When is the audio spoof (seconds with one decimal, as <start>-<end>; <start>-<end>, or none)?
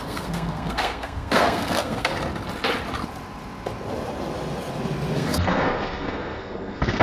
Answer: 0.0-2.1; 5.1-7.0